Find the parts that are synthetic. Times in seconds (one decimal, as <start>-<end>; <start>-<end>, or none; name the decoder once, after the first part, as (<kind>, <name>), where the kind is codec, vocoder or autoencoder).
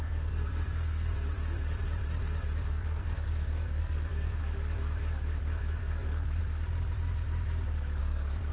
0.0-1.1 (codec, SNAC); 2.7-4.4; 5.4-6.4; 8.0-8.5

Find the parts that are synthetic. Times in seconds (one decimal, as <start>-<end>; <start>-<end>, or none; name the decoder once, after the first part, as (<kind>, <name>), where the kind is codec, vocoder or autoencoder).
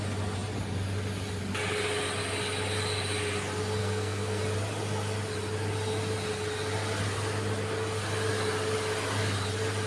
3.8-4.4 (codec, SNAC)